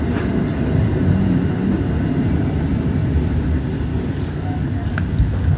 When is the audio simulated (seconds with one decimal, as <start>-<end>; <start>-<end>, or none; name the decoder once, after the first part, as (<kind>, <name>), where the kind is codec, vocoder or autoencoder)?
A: 3.9-5.0 (codec, DAC)